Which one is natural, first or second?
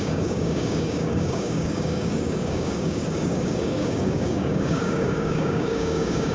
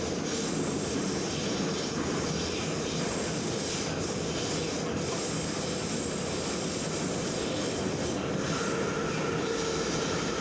second